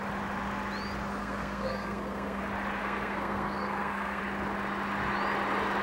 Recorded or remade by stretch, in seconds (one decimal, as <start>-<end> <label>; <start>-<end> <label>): 0.0-1.2 recorded; 1.2-2.4 remade; 2.4-2.8 recorded; 2.8-4.2 remade; 4.2-5.8 recorded